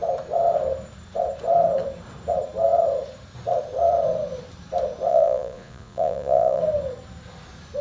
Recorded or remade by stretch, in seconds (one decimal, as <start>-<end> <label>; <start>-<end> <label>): 0.0-5.1 recorded; 5.1-6.6 remade; 6.6-7.8 recorded